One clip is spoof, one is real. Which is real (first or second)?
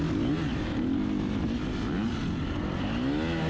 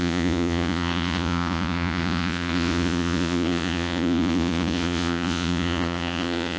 first